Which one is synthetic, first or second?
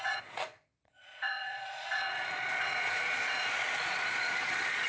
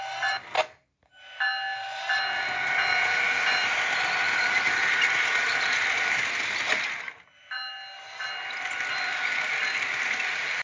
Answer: first